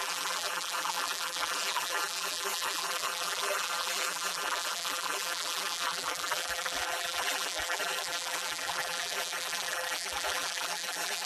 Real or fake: fake